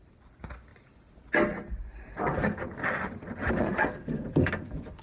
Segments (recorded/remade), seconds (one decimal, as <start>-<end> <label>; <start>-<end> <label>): 0.0-3.7 recorded; 3.7-4.5 remade; 4.5-5.0 recorded